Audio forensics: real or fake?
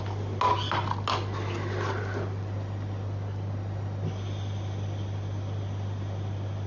real